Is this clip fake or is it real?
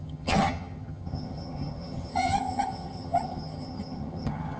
fake